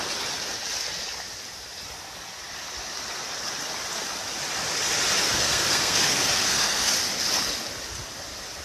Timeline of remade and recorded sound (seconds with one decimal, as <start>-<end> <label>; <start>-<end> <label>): 0.0-5.2 recorded; 5.2-6.9 remade; 6.9-8.6 recorded